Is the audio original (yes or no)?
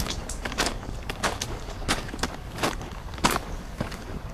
no